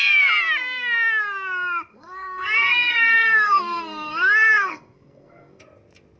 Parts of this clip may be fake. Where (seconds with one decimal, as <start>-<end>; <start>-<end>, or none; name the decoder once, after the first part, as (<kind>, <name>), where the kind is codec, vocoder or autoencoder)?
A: 1.9-5.6 (codec, SNAC)